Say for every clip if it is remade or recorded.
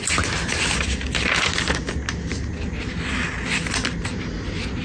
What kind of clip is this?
recorded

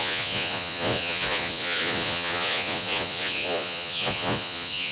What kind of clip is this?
remade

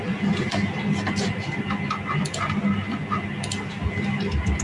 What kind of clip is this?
recorded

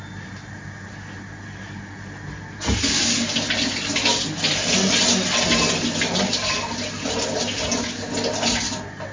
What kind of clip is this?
recorded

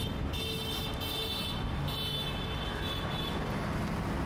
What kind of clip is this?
recorded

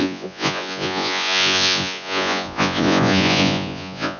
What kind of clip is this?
remade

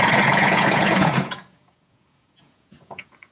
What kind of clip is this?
remade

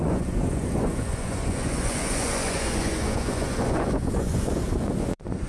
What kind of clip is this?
remade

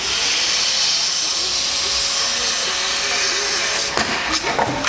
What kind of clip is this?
recorded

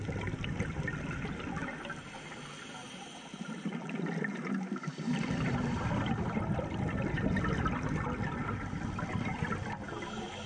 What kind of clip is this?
recorded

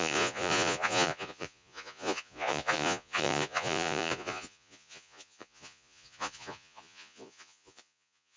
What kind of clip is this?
remade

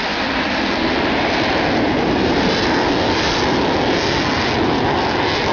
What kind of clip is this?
recorded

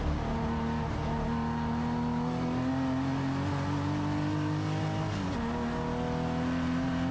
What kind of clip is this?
recorded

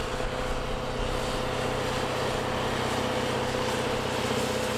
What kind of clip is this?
recorded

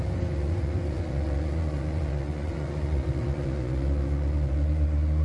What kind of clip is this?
remade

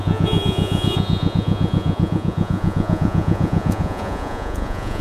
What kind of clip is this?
remade